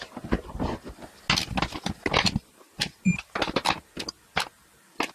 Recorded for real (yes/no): yes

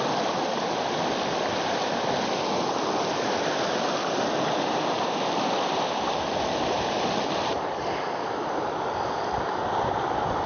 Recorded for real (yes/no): yes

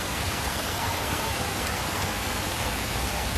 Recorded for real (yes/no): no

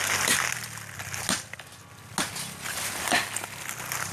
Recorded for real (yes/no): yes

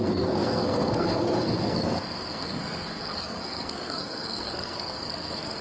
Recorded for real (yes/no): no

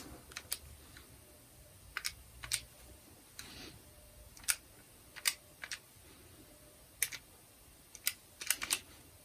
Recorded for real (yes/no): yes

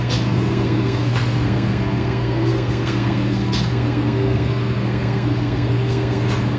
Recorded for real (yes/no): no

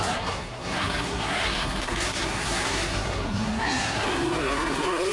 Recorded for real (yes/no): no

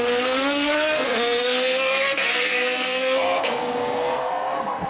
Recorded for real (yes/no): no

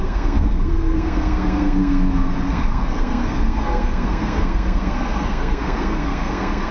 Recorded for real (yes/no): no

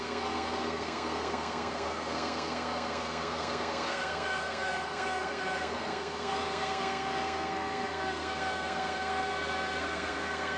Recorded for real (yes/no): no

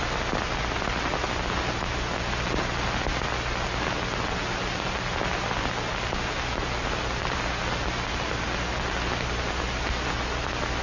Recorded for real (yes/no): yes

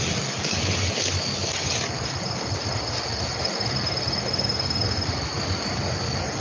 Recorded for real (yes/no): yes